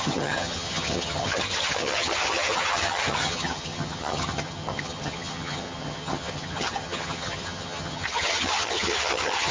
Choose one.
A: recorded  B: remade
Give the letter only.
B